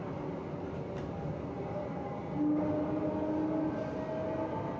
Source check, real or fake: real